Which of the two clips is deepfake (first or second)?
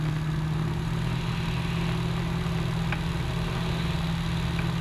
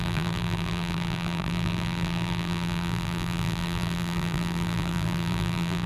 second